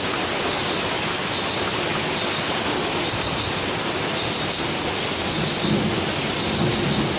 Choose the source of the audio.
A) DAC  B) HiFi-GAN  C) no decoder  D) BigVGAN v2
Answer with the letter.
C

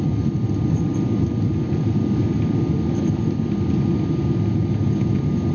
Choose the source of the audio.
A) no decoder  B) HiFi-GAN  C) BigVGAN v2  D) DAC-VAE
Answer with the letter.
A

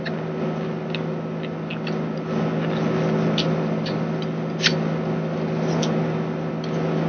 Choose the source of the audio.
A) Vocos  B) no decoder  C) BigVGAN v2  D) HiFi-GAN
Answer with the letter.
B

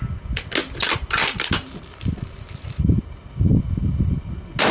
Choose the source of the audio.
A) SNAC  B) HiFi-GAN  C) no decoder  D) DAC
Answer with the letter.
C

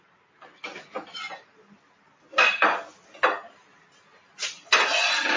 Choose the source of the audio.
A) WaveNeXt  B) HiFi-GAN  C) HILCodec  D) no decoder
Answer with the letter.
D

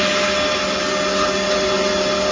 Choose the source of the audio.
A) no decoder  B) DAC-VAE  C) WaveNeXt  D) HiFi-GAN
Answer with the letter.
A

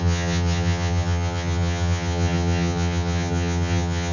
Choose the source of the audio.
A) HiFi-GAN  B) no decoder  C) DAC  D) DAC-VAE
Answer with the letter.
A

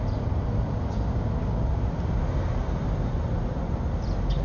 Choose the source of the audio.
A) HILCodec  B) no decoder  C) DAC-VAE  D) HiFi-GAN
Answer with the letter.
B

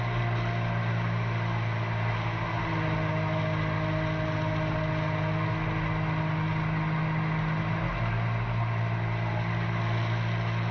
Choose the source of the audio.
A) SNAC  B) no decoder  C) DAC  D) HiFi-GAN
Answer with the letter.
B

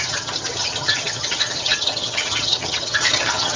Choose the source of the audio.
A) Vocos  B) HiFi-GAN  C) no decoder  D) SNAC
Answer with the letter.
B